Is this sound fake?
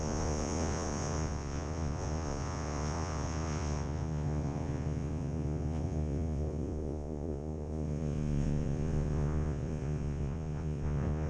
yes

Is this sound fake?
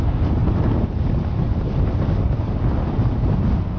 no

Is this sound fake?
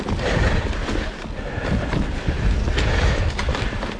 no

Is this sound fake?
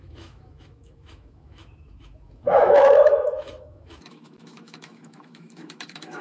yes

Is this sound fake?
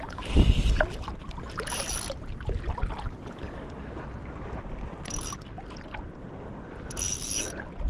no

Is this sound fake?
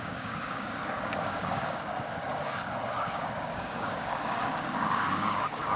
yes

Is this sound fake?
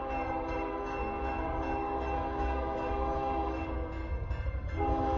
yes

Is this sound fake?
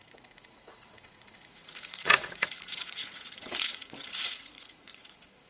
yes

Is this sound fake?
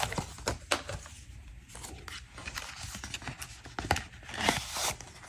no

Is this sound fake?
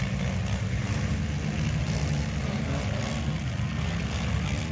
no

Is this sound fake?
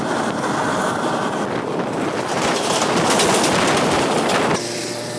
no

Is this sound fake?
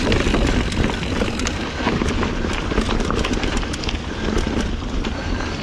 yes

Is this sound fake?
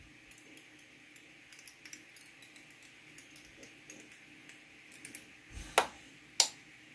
no